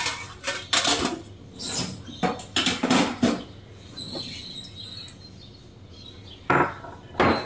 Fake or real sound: real